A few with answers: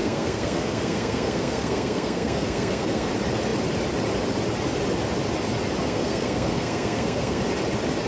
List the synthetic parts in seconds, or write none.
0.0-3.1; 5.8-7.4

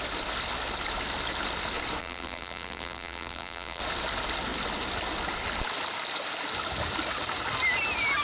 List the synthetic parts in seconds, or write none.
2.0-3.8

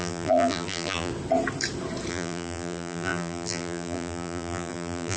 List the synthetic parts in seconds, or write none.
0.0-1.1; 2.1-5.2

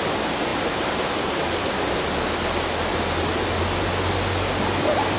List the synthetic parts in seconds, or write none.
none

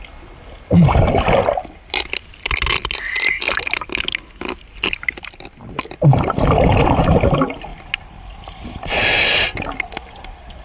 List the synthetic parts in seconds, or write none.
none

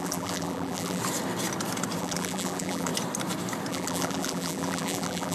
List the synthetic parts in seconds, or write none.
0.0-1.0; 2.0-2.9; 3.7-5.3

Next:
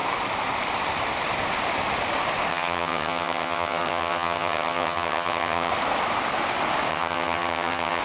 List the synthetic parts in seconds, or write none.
2.5-5.7; 6.9-8.0